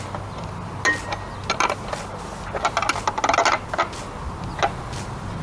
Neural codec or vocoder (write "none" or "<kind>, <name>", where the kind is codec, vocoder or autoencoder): none